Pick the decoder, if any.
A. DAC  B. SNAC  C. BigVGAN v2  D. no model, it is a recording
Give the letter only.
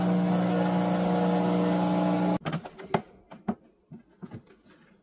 D